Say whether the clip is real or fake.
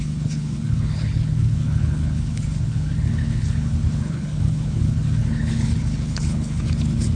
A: fake